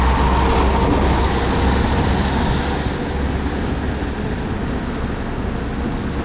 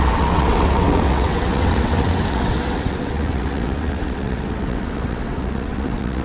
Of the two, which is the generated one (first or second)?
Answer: second